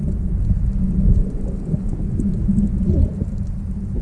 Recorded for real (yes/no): yes